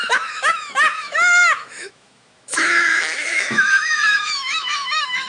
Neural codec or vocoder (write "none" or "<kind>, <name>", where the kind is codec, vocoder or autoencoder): autoencoder, DAC-VAE